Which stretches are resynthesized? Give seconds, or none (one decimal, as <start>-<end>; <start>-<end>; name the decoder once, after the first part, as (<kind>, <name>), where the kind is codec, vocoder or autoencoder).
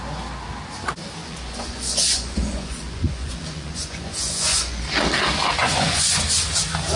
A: 1.2-4.8 (vocoder, Vocos); 5.6-6.2